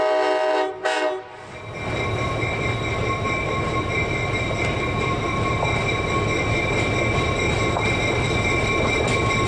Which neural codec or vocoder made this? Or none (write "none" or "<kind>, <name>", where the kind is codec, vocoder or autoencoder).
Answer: none